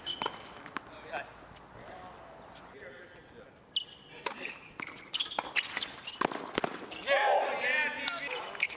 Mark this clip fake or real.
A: real